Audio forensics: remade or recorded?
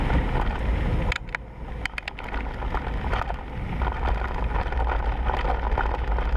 recorded